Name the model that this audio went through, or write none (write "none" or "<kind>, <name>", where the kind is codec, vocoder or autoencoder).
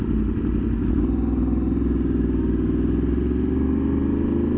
none